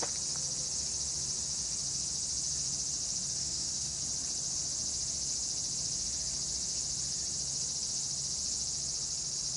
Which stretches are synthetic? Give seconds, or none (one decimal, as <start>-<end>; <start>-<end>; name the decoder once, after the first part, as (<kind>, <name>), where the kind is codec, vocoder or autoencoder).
3.4-4.0 (codec, SNAC)